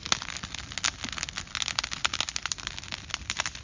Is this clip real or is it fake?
real